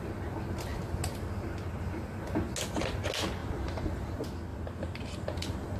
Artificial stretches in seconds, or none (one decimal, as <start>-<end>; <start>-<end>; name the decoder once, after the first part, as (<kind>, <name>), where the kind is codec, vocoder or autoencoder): 3.4-4.1 (vocoder, BigVGAN v2); 4.5-5.0